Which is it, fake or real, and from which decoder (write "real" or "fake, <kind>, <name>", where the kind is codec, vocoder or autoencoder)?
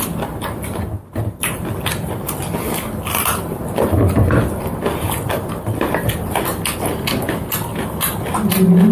real